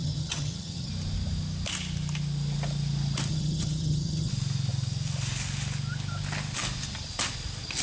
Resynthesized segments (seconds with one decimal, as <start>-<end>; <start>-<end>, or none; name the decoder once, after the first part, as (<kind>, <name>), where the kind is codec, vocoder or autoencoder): 0.0-0.9 (vocoder, HiFi-GAN); 3.3-4.3